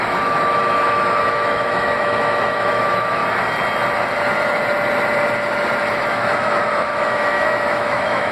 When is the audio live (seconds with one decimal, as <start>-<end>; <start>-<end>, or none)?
3.2-6.1